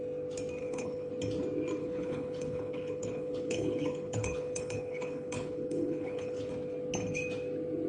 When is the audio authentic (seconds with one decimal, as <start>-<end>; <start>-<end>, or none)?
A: 0.0-0.6; 1.1-1.8; 6.5-7.9